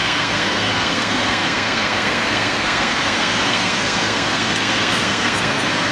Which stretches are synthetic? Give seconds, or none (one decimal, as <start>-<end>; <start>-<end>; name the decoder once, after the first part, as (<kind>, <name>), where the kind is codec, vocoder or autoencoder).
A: 0.0-5.9 (codec, SNAC)